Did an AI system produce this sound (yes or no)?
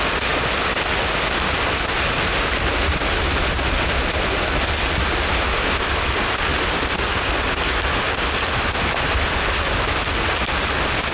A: no